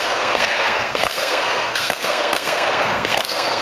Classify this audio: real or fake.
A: fake